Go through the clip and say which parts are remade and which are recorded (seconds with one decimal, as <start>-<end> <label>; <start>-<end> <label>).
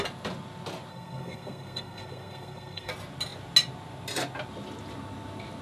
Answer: 0.0-0.9 recorded; 0.9-2.9 remade; 2.9-5.6 recorded